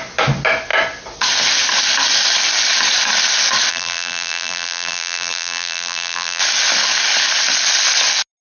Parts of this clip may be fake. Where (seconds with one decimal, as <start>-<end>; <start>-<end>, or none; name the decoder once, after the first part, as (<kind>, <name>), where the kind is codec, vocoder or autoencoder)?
3.7-6.4 (vocoder, BigVGAN v2)